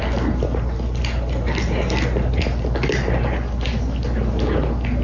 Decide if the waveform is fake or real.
real